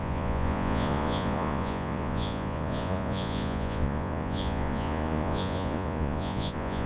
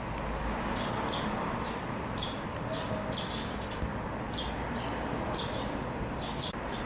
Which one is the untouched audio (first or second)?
second